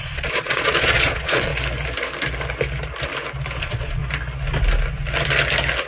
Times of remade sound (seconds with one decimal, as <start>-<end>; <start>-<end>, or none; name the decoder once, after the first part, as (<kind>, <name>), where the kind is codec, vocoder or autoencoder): 0.0-1.5 (vocoder, Vocos); 3.6-4.0